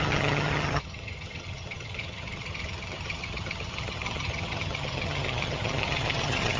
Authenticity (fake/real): fake